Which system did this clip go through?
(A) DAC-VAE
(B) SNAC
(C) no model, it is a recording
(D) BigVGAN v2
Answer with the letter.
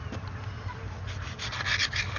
C